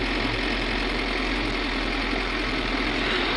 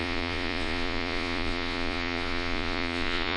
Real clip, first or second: first